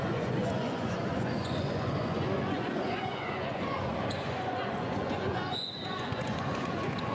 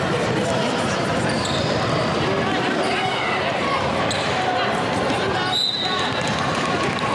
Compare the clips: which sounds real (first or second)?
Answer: second